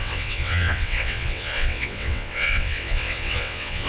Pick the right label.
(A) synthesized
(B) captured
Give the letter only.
A